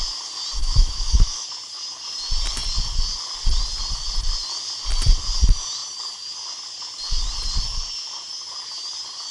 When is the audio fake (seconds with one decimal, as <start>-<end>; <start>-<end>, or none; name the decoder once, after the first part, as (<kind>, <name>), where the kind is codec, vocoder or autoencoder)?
0.6-1.5 (autoencoder, DAC-VAE)